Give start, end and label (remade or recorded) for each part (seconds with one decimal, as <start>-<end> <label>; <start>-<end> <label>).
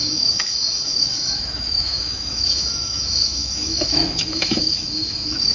0.0-5.5 remade